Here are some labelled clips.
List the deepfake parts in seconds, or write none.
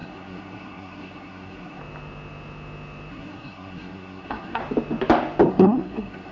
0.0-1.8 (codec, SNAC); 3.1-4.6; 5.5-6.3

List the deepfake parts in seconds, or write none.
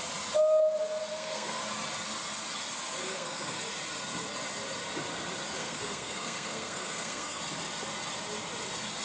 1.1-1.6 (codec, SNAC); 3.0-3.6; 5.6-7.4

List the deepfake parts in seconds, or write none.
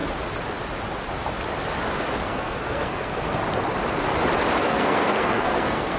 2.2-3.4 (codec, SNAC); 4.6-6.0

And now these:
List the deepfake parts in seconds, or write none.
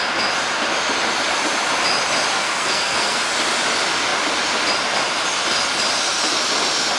2.4-3.3 (codec, SNAC)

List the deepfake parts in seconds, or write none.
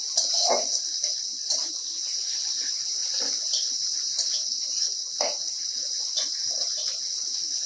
none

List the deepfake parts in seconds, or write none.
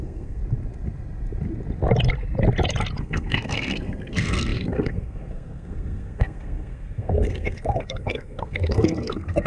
0.0-0.4 (codec, SNAC); 3.0-9.5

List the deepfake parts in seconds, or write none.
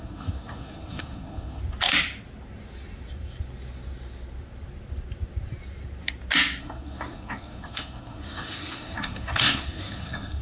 0.0-1.6 (codec, SNAC); 6.6-10.4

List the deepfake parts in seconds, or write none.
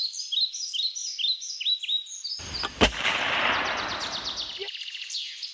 none